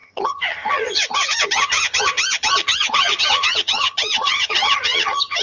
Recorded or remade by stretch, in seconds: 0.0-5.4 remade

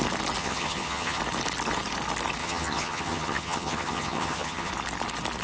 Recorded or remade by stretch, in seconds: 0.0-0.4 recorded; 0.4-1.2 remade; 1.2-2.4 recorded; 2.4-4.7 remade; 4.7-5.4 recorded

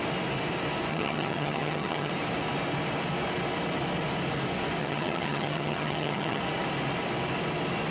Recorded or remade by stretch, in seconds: 0.0-0.9 recorded; 0.9-2.1 remade; 2.1-4.8 recorded; 4.8-6.4 remade; 6.4-7.9 recorded